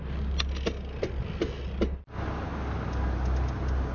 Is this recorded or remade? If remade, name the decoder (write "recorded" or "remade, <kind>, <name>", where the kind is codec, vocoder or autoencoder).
recorded